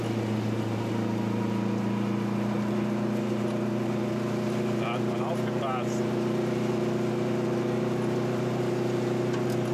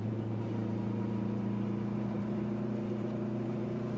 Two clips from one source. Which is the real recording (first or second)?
first